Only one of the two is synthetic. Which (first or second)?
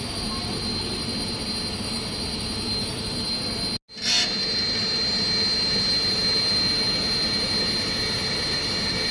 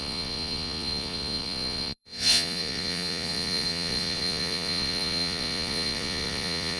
second